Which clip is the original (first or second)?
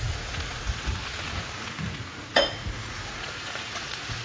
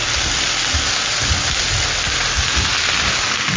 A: second